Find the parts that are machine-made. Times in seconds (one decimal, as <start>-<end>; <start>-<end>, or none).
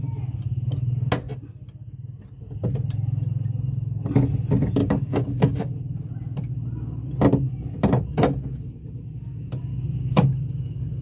4.8-6.1; 8.1-8.8; 9.7-11.0